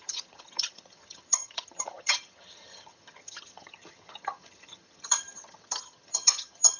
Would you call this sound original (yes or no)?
no